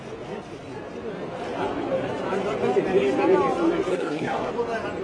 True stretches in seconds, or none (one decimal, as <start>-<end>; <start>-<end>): 0.0-3.9; 4.5-5.0